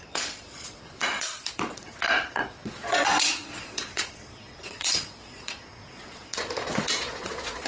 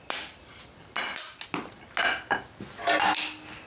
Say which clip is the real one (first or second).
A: second